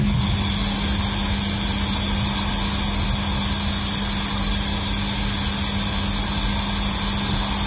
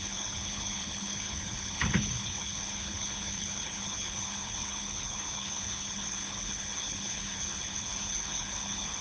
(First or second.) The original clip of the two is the first